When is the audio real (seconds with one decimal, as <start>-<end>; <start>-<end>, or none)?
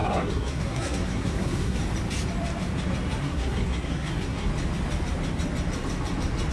1.8-3.2; 4.5-6.5